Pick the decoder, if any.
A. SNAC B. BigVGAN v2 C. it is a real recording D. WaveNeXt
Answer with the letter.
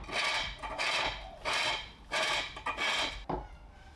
C